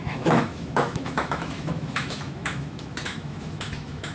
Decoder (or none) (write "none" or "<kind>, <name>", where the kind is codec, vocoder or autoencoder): autoencoder, DAC-VAE